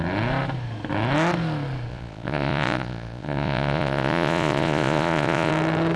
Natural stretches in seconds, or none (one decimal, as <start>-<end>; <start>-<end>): 0.0-1.9; 5.5-6.0